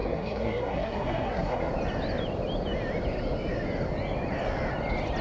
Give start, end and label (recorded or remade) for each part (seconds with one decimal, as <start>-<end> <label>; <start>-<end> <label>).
0.0-1.7 remade; 1.7-5.2 recorded